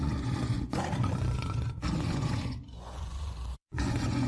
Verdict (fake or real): fake